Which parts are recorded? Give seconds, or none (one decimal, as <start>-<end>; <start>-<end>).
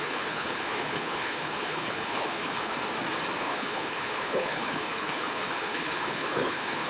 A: 2.8-3.4